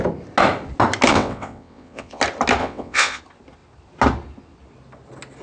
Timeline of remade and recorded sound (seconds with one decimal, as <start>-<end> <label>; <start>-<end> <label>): 0.0-1.1 recorded; 1.1-2.2 remade; 2.2-2.6 recorded; 2.6-3.2 remade; 3.2-5.4 recorded